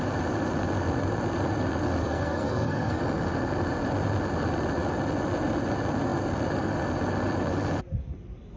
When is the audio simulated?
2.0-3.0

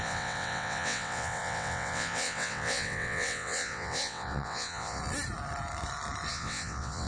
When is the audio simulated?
0.0-5.0; 6.3-7.1

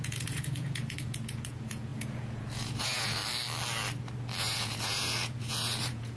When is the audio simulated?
0.0-3.2; 4.4-6.2

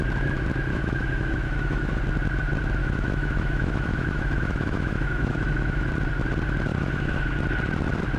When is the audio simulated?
0.7-2.0; 2.8-5.9; 6.7-7.3

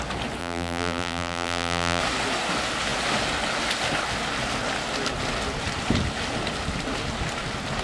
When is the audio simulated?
0.4-2.0

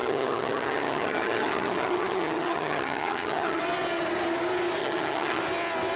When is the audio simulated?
0.0-3.6; 4.8-5.4

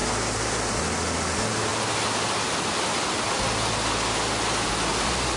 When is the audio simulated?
none

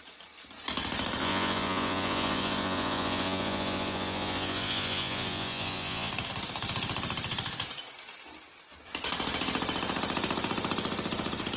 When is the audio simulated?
1.2-6.1